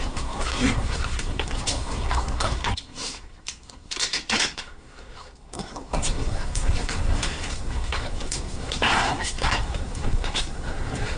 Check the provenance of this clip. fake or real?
fake